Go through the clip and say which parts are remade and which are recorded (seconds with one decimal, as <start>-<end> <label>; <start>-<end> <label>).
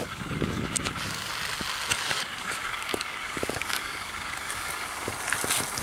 0.0-1.3 remade; 1.3-1.9 recorded; 1.9-5.1 remade; 5.1-5.8 recorded